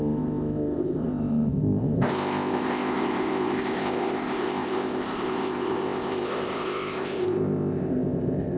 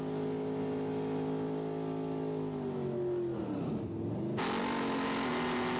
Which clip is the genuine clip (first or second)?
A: second